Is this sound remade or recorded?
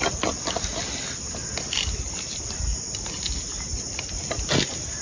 recorded